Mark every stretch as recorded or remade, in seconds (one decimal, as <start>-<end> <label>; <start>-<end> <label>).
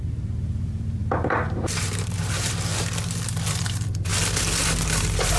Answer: 0.0-2.7 remade; 2.7-3.5 recorded; 3.5-4.1 remade; 4.1-4.8 recorded; 4.8-5.4 remade